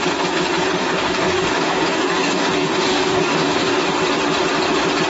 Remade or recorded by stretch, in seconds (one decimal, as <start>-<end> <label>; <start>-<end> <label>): 0.0-0.8 recorded; 0.8-3.9 remade; 3.9-5.1 recorded